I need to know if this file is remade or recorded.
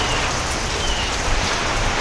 recorded